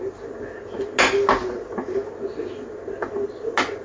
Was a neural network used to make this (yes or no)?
no